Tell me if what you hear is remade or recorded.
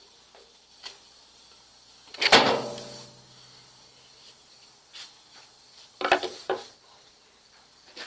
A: recorded